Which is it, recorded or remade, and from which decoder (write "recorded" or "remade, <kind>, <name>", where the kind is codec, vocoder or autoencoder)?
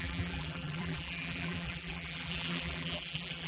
remade, vocoder, BigVGAN v2